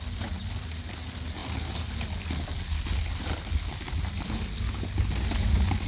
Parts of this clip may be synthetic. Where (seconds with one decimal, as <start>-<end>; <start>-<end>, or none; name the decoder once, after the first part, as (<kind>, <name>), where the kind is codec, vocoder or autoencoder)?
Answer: none